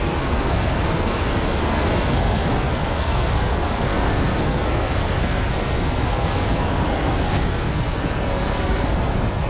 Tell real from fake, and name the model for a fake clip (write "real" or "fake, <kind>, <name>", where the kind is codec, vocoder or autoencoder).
fake, codec, SNAC